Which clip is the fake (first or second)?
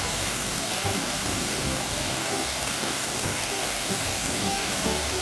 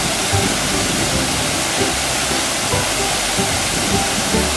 first